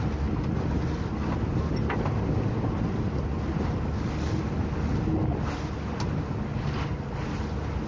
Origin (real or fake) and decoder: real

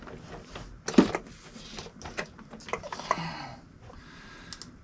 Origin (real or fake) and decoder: real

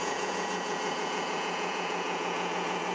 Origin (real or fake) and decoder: fake, vocoder, Vocos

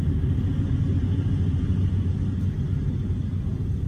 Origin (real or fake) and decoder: real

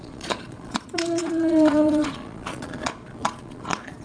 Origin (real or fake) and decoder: fake, vocoder, Vocos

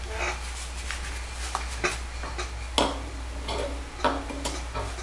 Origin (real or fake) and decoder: real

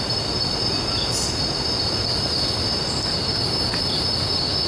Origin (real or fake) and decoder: real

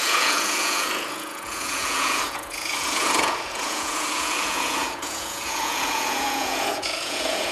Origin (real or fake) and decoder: fake, vocoder, Vocos